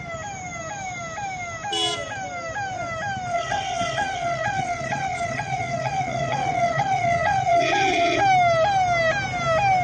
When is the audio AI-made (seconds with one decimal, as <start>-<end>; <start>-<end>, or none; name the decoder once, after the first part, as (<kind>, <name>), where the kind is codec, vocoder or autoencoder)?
3.3-8.2 (vocoder, WaveNeXt)